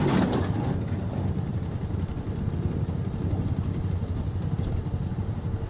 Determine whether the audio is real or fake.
real